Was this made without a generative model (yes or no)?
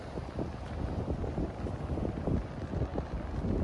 yes